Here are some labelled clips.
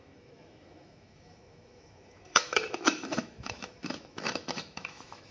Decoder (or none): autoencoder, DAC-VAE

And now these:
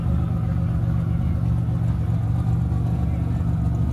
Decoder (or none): none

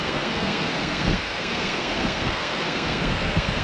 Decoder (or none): codec, SNAC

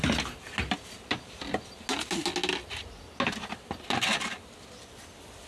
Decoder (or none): none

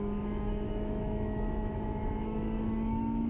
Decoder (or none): autoencoder, DAC-VAE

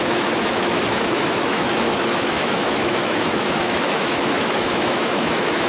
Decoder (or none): autoencoder, DAC-VAE